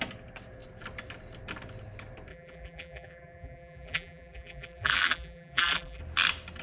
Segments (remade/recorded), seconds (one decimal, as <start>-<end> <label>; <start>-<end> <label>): 0.0-2.3 recorded; 2.3-6.0 remade; 6.0-6.6 recorded